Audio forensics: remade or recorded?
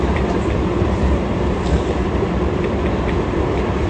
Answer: remade